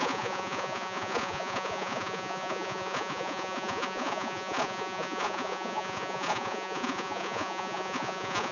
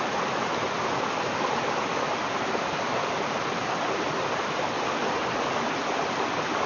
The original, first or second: second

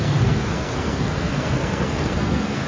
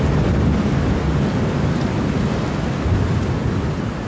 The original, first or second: second